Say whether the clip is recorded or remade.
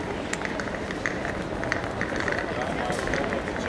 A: recorded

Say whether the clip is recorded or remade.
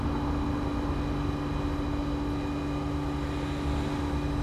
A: recorded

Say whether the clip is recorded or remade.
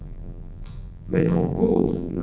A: remade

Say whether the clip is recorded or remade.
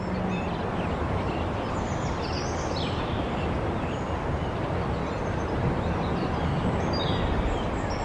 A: recorded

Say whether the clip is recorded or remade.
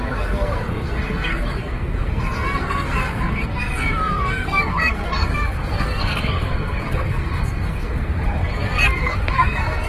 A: remade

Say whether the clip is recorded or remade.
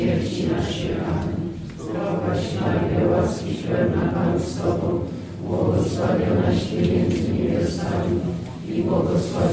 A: remade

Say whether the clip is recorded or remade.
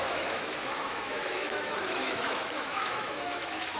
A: remade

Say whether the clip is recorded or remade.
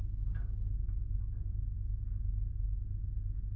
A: recorded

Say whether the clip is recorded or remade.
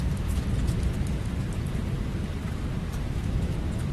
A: remade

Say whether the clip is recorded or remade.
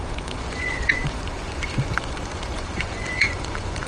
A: remade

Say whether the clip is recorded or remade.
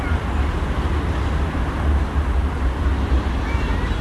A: recorded